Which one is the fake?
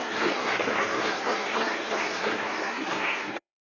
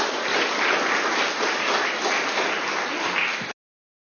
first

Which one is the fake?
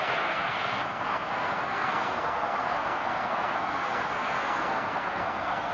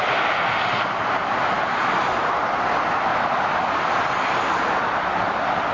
first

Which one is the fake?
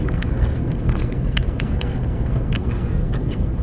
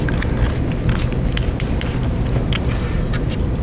first